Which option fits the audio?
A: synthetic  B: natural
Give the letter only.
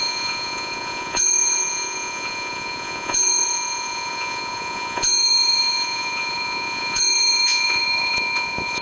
A